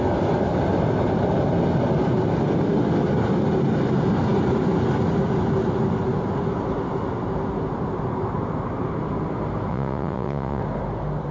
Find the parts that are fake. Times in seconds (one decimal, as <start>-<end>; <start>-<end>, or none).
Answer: 9.7-10.6